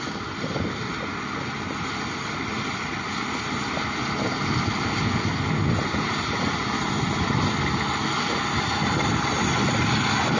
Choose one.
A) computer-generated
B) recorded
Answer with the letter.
B